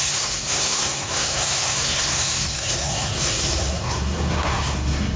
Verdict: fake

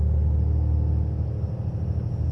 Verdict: real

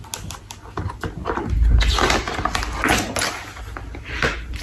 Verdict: real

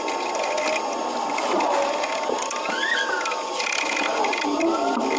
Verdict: real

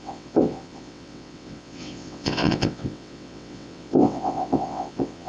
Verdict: fake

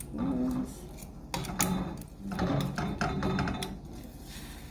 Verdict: real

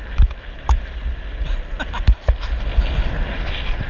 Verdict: real